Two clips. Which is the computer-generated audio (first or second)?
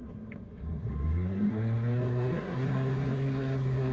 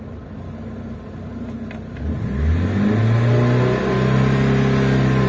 first